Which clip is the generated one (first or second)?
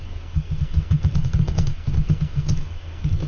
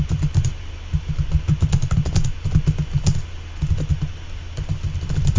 first